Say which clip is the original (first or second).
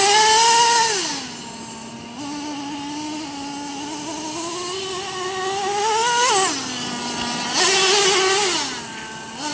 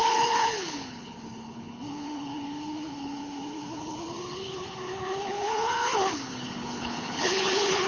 first